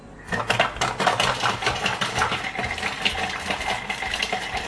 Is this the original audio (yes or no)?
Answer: yes